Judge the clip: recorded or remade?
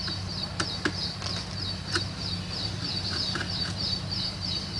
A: remade